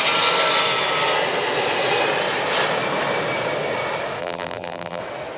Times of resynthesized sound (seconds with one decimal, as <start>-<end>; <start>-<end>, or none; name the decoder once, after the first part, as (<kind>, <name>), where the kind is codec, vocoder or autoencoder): 4.2-5.0 (vocoder, BigVGAN v2)